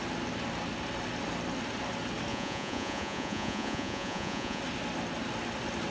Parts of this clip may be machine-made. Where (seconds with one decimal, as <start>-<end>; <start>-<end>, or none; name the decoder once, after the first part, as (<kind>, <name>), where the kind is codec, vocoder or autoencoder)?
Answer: 2.3-4.6 (vocoder, Vocos)

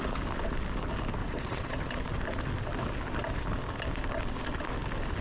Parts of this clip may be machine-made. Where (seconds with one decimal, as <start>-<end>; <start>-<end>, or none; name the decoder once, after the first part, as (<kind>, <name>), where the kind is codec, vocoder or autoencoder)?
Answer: 1.2-1.8 (vocoder, Vocos)

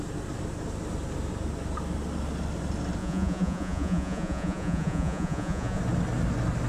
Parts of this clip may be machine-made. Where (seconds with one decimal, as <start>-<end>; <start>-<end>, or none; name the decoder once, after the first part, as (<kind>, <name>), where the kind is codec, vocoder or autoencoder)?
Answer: 3.0-5.8 (vocoder, Vocos)